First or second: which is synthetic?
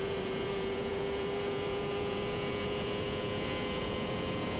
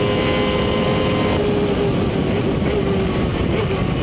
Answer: first